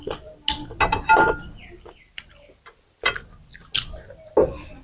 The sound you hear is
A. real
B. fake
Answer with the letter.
A